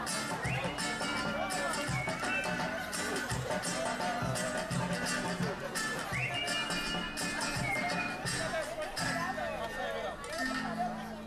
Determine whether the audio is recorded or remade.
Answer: recorded